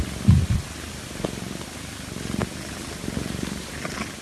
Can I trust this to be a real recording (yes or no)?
yes